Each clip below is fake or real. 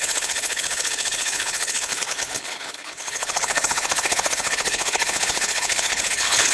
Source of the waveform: fake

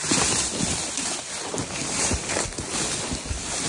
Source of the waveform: real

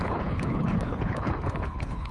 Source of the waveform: fake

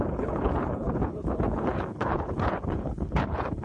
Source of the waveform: fake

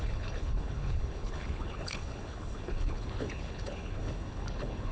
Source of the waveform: fake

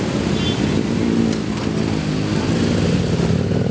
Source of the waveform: real